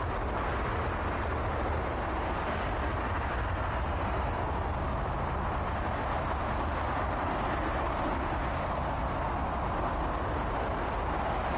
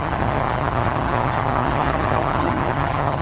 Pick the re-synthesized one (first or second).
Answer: second